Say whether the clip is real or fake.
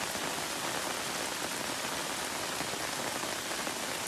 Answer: real